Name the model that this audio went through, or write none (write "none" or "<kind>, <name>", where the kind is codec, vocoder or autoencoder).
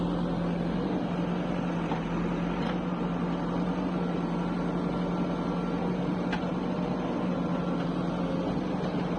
none